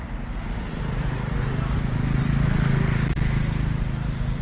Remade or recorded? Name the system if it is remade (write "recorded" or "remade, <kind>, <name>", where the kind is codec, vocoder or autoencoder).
recorded